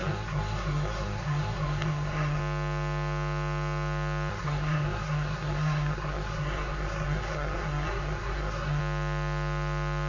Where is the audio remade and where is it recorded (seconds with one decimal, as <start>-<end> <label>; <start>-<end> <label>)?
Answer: 0.0-2.4 remade; 2.4-4.3 recorded; 4.3-8.8 remade; 8.8-10.1 recorded